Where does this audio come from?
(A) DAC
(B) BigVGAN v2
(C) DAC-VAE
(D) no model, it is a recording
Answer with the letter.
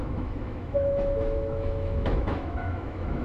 C